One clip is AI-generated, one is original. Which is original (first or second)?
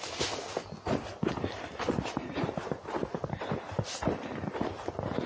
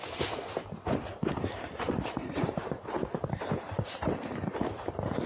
first